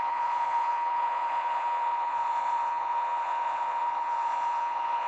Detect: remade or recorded remade